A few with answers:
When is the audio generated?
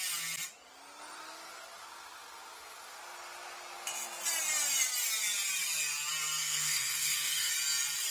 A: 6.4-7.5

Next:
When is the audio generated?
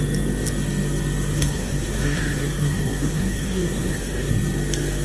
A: 1.3-4.3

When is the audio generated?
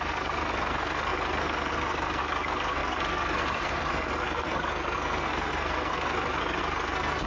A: 0.0-7.3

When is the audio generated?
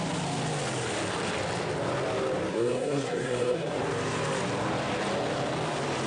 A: 2.5-3.8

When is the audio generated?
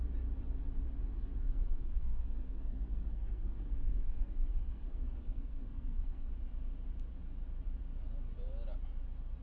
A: 1.4-6.3